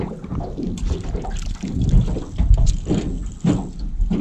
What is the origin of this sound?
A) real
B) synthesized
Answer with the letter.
A